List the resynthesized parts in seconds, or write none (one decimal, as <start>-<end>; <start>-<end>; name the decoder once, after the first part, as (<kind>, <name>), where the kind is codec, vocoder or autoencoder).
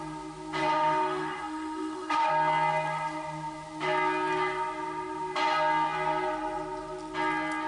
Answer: 0.6-2.3 (autoencoder, DAC-VAE)